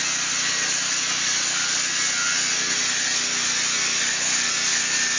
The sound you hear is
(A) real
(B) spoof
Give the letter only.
A